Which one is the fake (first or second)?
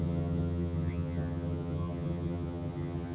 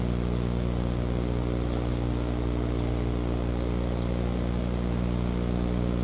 first